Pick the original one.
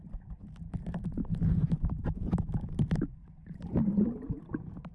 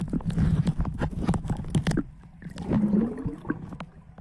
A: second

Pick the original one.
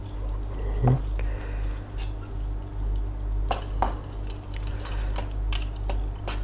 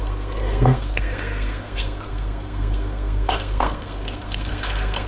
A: first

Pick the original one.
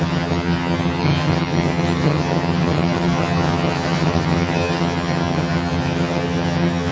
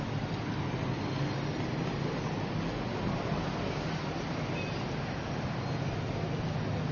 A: second